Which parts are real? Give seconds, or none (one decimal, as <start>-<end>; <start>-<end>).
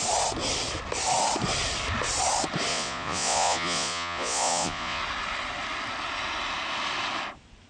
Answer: 0.0-2.7; 5.0-7.7